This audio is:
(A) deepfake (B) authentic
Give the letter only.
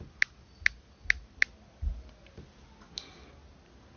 B